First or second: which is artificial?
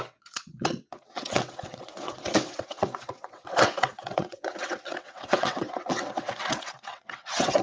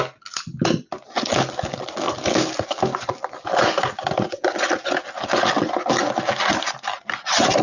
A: first